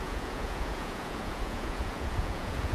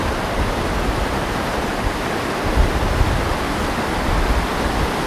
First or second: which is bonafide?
second